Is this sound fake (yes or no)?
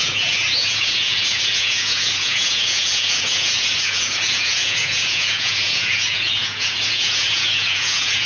yes